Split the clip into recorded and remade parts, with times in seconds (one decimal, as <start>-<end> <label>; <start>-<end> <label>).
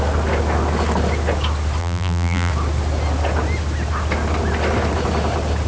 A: 0.0-1.8 recorded; 1.8-2.5 remade; 2.5-5.7 recorded